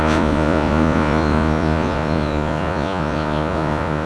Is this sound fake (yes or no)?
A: yes